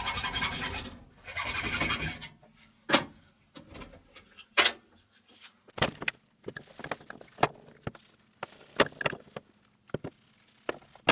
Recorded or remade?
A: recorded